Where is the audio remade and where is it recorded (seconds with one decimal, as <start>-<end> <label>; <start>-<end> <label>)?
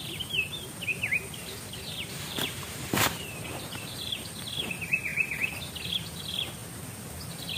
0.0-0.9 remade; 0.9-1.9 recorded; 1.9-5.1 remade; 5.1-5.9 recorded; 5.9-6.6 remade; 6.6-7.6 recorded